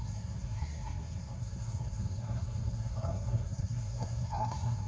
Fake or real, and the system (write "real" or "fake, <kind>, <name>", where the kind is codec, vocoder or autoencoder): fake, codec, SNAC